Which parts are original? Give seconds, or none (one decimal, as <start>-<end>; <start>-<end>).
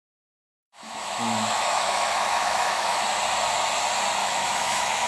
3.0-4.2